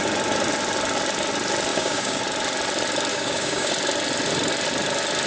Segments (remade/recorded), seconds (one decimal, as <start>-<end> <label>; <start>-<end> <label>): 0.0-1.7 recorded; 1.7-2.2 remade; 2.2-3.1 recorded; 3.1-3.7 remade; 3.7-5.3 recorded